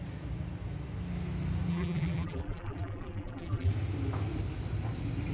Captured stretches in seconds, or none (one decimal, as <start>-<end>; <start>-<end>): 0.0-1.7; 3.7-5.3